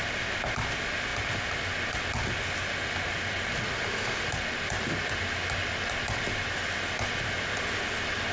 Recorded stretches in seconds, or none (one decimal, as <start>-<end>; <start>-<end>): 0.0-8.3